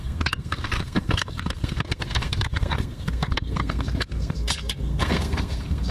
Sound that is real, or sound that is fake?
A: fake